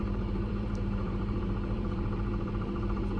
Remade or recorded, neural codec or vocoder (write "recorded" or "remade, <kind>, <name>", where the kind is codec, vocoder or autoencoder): remade, vocoder, BigVGAN v2